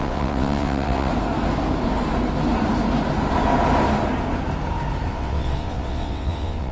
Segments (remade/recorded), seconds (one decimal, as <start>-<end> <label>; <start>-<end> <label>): 0.0-1.1 remade; 1.1-5.1 recorded; 5.1-6.7 remade

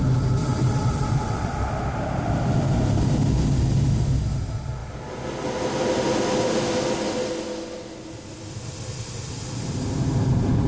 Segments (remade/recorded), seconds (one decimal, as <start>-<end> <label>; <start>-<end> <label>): 0.0-0.4 recorded; 0.4-1.5 remade; 1.5-10.7 recorded